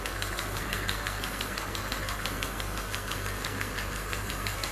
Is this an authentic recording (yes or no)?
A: no